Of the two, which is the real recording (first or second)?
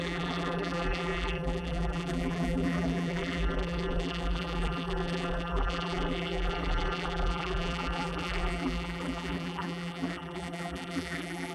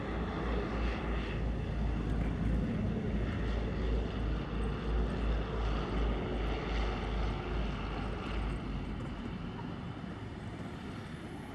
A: second